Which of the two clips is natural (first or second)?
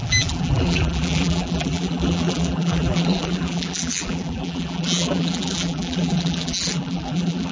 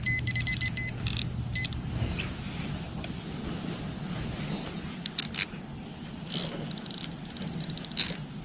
second